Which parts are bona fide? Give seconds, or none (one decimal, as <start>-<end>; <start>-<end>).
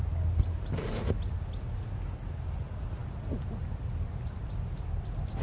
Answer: 0.0-5.4